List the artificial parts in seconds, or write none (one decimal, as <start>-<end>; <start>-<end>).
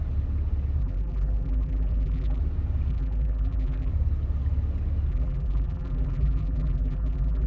0.8-2.4; 2.9-3.9; 5.1-7.5